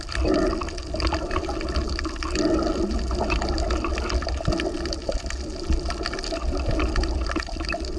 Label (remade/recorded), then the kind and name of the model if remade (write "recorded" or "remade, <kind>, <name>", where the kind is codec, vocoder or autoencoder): recorded